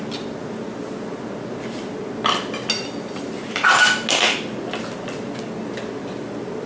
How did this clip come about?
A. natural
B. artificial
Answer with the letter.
A